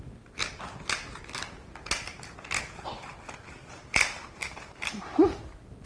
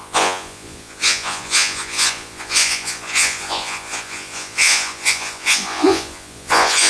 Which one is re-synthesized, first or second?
second